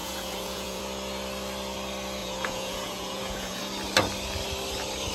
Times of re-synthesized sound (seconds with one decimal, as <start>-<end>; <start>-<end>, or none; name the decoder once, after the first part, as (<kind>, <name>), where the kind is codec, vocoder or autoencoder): 0.0-0.8 (vocoder, Vocos); 2.2-3.6

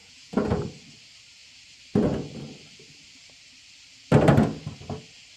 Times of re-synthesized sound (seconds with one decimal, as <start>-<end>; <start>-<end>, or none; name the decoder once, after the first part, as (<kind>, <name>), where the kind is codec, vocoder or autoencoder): 0.0-0.6 (vocoder, Vocos)

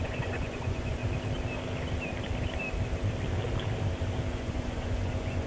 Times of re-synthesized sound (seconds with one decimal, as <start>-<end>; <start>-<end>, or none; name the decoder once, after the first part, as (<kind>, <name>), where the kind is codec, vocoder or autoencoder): 0.0-1.0 (vocoder, Vocos); 4.3-5.5

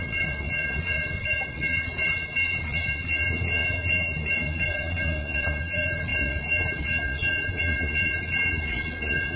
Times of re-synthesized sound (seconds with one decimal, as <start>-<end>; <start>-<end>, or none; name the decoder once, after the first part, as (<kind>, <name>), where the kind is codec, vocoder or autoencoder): 0.0-9.4 (vocoder, Vocos)